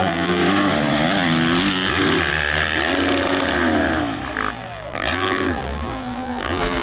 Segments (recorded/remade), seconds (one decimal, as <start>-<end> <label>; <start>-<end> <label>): 0.0-0.4 remade; 0.4-4.5 recorded; 4.5-6.8 remade